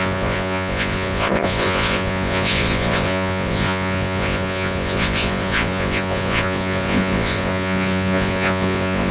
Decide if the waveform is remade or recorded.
remade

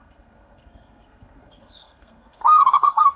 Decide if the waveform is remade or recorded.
remade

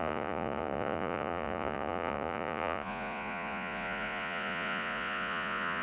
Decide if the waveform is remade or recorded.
remade